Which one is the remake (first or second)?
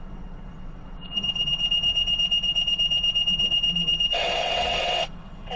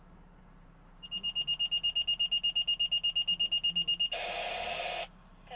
first